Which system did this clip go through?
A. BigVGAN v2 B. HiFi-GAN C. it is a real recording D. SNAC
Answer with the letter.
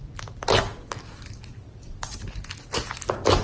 C